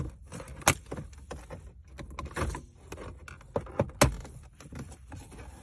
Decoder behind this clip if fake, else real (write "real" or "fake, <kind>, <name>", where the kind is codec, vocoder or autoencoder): real